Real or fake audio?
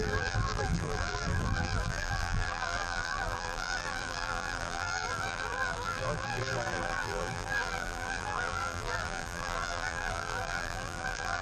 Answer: fake